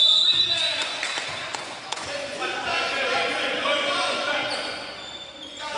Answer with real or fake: fake